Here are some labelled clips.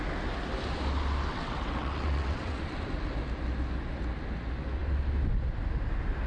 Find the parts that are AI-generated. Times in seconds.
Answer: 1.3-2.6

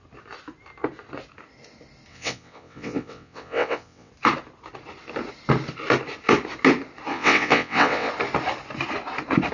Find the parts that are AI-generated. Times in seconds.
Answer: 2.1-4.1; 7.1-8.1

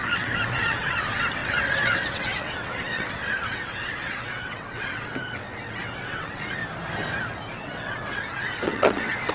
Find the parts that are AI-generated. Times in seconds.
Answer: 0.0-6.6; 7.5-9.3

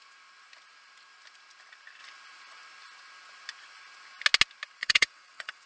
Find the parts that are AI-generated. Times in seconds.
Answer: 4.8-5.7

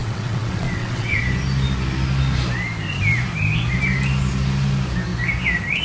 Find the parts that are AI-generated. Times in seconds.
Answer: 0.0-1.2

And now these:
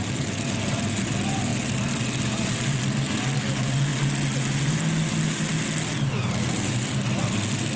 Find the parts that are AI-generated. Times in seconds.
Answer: none

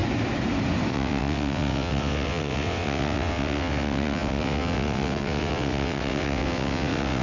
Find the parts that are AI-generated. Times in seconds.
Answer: 0.9-7.2